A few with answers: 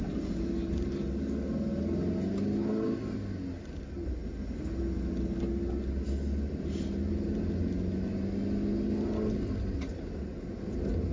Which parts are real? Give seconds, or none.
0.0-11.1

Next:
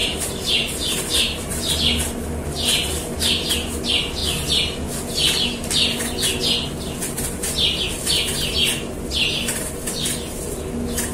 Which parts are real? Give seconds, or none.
1.5-11.1

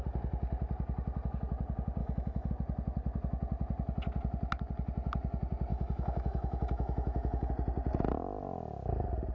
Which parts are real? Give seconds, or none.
0.0-2.0; 2.5-5.7; 7.5-9.3

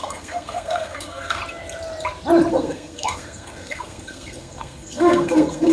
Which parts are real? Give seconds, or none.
1.4-2.5

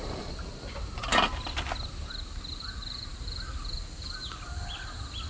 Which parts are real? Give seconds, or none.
0.0-3.1; 4.4-5.3

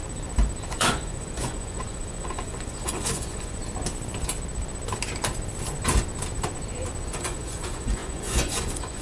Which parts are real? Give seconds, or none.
0.0-0.7; 3.6-7.0